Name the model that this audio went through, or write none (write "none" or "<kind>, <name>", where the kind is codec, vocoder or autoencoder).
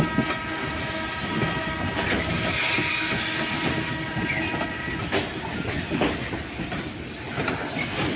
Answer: none